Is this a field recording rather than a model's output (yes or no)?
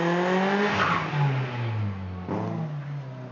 yes